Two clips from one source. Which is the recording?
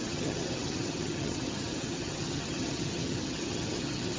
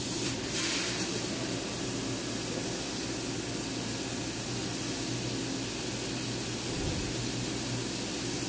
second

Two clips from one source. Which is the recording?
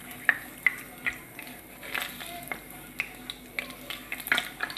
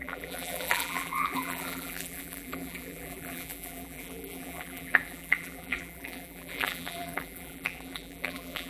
first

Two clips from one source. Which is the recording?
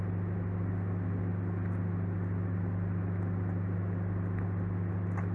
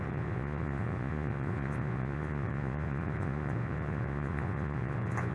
first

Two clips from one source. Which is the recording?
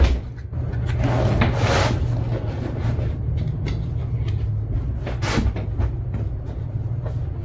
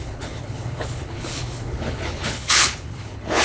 first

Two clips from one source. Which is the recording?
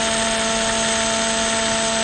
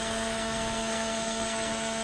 first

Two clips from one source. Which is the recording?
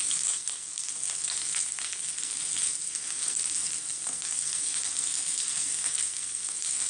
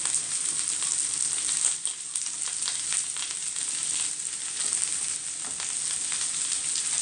second